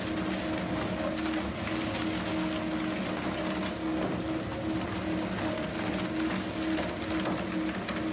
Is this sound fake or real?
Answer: real